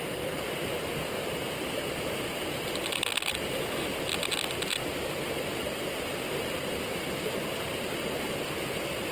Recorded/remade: recorded